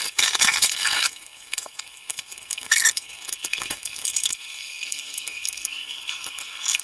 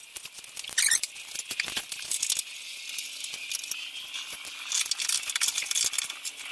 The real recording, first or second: second